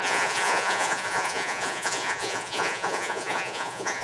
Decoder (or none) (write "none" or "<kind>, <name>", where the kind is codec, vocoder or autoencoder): vocoder, Vocos